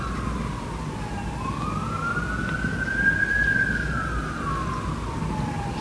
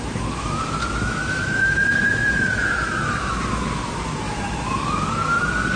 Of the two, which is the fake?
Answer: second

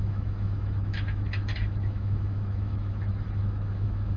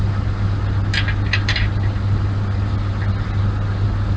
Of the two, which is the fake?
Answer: first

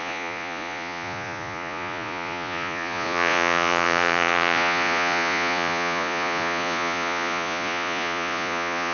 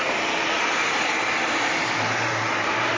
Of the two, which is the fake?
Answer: first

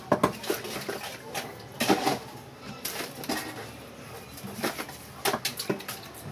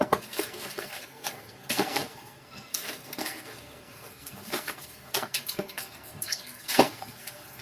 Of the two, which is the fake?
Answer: second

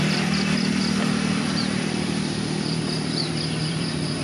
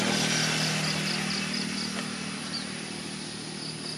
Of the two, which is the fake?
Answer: first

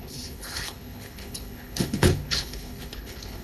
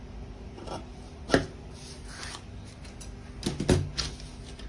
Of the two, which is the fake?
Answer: first